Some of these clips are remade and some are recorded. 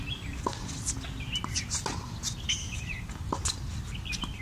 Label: recorded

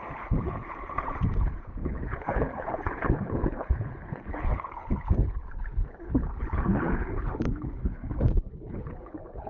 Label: remade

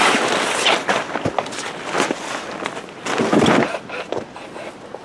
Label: recorded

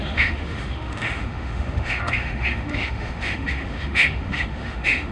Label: remade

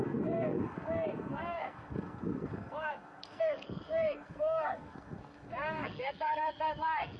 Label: remade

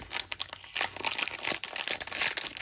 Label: recorded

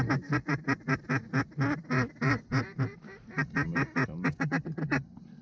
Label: recorded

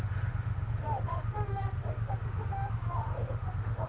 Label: remade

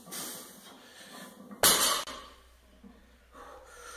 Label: recorded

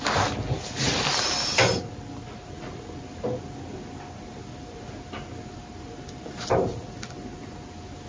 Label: recorded